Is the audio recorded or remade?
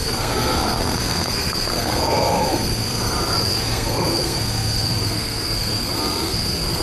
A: remade